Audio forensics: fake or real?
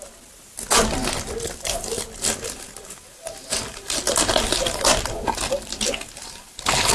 real